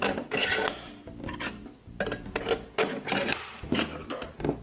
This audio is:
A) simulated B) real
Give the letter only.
B